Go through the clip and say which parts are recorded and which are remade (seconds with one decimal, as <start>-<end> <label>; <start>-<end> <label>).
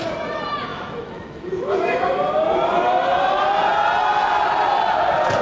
0.0-0.7 recorded; 0.7-1.7 remade; 1.7-5.4 recorded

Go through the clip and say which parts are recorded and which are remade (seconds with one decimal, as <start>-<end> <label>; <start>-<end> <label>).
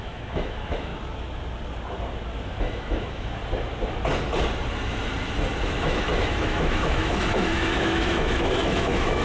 0.0-0.9 remade; 0.9-2.6 recorded; 2.6-3.4 remade; 3.4-5.6 recorded; 5.6-9.2 remade